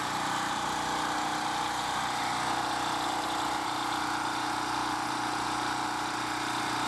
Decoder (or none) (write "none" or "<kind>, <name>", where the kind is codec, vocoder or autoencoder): none